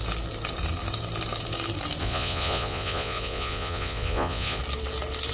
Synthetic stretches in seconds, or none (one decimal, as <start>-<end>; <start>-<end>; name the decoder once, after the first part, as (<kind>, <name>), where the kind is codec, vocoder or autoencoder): 2.0-4.6 (vocoder, Vocos)